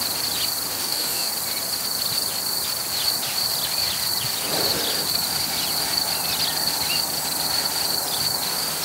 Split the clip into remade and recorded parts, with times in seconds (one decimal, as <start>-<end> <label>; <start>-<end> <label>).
0.0-0.8 recorded; 0.8-1.3 remade; 1.3-8.8 recorded